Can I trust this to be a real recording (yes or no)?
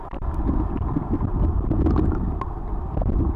yes